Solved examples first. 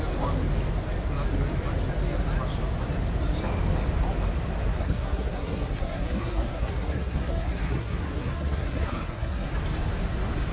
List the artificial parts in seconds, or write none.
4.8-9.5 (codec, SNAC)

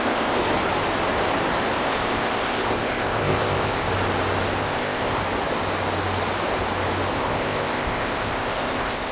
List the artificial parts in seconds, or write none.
0.0-0.4 (codec, ZipCodec); 1.8-3.9; 4.6-5.2; 7.1-9.1